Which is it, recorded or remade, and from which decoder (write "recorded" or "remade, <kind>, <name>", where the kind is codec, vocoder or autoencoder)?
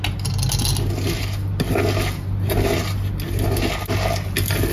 recorded